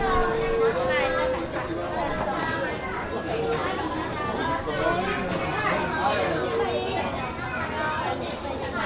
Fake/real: real